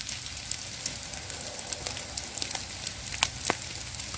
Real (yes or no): yes